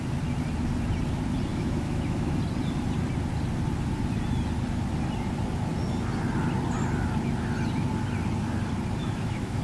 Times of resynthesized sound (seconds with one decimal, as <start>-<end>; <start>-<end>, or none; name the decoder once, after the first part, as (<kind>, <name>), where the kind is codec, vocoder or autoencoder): 1.5-2.4 (autoencoder, DAC-VAE); 9.0-9.6